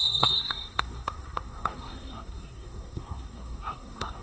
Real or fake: fake